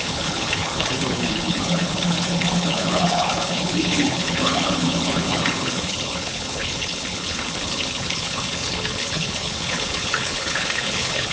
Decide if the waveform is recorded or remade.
remade